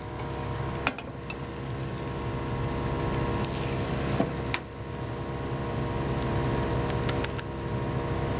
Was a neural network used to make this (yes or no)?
no